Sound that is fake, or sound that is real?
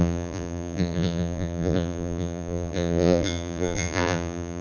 fake